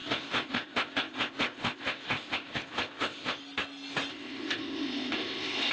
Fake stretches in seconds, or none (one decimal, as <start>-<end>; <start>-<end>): 0.0-3.4; 4.1-5.7